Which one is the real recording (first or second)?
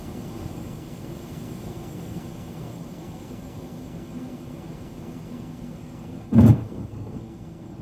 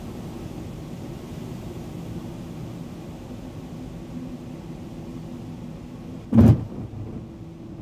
second